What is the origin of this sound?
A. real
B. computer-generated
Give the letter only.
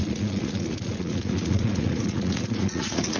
B